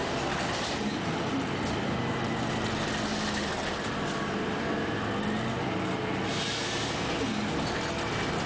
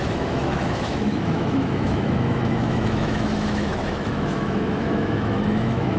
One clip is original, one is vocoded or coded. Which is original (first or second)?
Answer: first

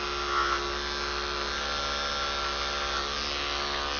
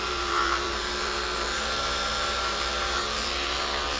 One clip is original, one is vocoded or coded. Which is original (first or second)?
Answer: first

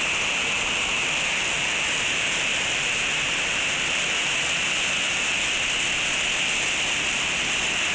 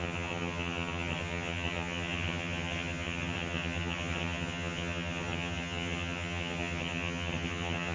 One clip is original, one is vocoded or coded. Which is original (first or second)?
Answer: first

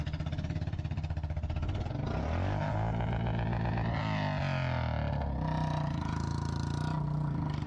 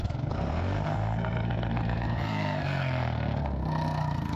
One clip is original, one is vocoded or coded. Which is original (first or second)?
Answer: first